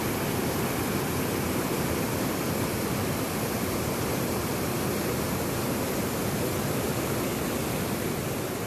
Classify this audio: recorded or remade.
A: recorded